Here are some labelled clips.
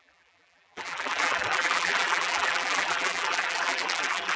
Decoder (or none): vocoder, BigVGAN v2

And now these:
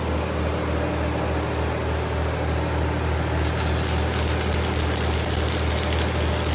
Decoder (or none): none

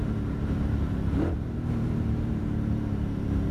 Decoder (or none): vocoder, BigVGAN v2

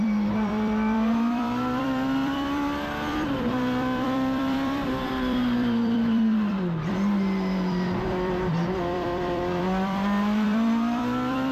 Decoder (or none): vocoder, BigVGAN v2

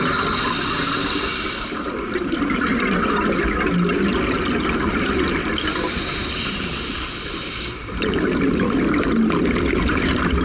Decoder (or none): none